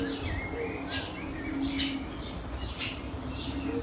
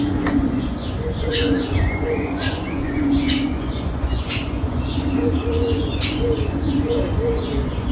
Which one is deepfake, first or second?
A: second